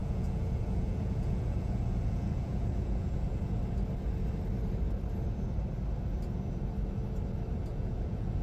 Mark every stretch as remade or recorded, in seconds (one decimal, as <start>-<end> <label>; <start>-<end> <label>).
0.0-3.6 remade; 3.6-7.7 recorded; 7.7-8.4 remade